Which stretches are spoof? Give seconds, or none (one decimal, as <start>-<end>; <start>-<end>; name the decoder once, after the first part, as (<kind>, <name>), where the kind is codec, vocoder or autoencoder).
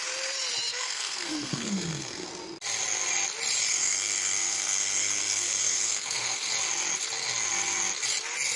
0.7-2.3 (codec, SNAC); 3.7-6.5